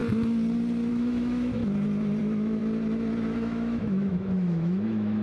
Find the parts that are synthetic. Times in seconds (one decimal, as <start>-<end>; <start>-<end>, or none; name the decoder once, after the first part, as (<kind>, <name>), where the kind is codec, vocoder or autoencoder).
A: 0.9-1.6 (autoencoder, DAC-VAE); 2.2-2.6; 3.3-5.2

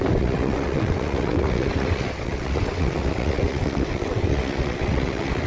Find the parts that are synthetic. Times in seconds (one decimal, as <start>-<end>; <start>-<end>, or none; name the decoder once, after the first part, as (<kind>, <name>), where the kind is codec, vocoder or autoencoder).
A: 0.0-5.5 (vocoder, WaveNeXt)

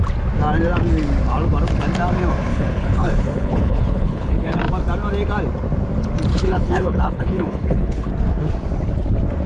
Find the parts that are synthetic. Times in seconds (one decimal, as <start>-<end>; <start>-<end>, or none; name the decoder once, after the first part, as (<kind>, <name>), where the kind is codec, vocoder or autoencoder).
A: 2.5-4.6 (codec, HILCodec); 6.3-8.1

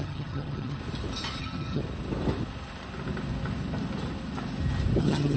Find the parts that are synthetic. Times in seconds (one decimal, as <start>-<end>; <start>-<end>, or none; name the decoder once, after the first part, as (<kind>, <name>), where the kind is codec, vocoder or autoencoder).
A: 0.0-0.8 (vocoder, HiFi-GAN); 1.4-1.8; 5.0-5.4

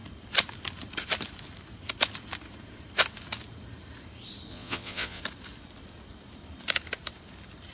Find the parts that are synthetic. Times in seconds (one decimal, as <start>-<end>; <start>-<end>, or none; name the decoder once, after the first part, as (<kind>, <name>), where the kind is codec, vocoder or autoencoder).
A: 4.5-5.2 (vocoder, Vocos)

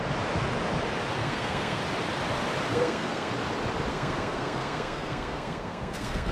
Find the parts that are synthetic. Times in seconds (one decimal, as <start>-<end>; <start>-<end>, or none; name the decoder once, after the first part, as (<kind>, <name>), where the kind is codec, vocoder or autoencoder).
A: 1.2-1.8 (codec, SNAC); 2.7-3.3; 3.9-6.3

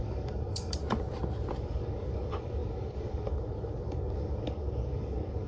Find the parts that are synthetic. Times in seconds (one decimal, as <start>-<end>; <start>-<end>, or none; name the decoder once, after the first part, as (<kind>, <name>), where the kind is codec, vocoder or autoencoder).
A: 0.0-0.8 (codec, DAC); 1.6-5.5

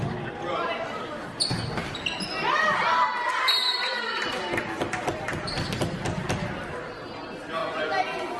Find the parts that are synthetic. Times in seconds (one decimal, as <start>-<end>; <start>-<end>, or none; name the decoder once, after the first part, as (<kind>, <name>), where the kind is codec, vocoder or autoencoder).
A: none